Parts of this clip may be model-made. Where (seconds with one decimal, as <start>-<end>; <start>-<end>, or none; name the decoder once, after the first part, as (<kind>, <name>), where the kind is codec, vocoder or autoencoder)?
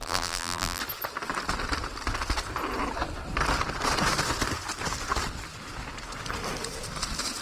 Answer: 0.0-0.8 (vocoder, BigVGAN v2)